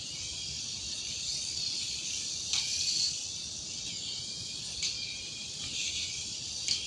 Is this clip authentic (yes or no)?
yes